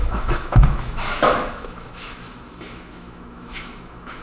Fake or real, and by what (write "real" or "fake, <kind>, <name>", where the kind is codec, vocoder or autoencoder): fake, autoencoder, DAC-VAE